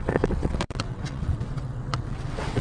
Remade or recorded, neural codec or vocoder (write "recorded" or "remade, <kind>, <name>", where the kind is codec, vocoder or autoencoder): remade, vocoder, WaveNeXt